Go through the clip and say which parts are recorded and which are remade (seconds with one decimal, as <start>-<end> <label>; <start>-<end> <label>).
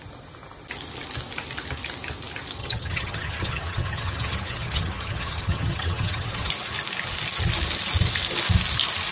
0.0-2.6 recorded; 2.6-6.5 remade; 6.5-9.1 recorded